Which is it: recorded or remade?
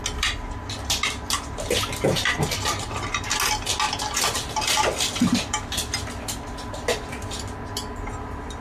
recorded